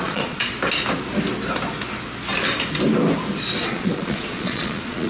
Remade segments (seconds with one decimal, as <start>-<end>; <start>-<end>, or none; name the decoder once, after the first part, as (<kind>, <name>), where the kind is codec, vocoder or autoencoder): 0.0-0.5 (vocoder, Vocos); 3.6-5.1